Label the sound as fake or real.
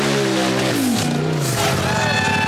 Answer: real